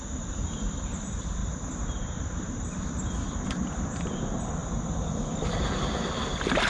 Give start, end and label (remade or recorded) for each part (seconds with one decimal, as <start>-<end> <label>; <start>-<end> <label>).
0.0-6.7 recorded